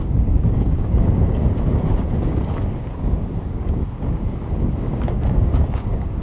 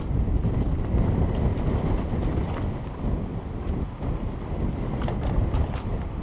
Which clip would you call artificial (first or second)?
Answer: first